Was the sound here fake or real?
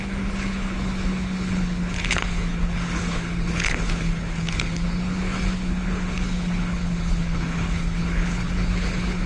fake